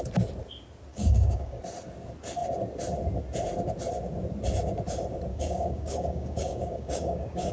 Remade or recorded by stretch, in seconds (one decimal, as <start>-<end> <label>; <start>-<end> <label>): 0.0-0.9 recorded; 0.9-1.6 remade; 1.6-5.3 recorded; 5.3-7.5 remade